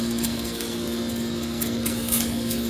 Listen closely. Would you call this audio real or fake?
fake